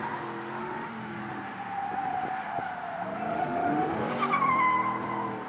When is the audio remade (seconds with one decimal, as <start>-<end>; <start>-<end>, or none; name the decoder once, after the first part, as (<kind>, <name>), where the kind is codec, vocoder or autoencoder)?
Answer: 0.6-1.2 (autoencoder, DAC-VAE); 3.3-4.1

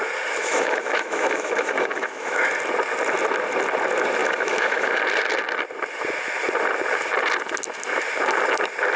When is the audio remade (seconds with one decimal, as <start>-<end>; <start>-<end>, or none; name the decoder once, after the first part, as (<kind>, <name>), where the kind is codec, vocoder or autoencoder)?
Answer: 0.4-2.4 (autoencoder, DAC-VAE); 4.2-5.0